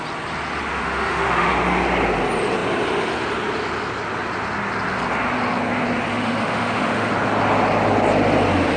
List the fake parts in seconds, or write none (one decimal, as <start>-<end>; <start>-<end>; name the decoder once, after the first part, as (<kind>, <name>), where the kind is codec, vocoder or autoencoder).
0.7-1.5 (autoencoder, DAC-VAE); 6.1-7.1